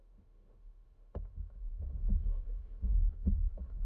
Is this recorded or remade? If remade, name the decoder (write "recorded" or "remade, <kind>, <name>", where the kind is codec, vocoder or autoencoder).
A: remade, autoencoder, DAC-VAE